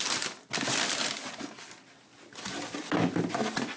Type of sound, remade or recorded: recorded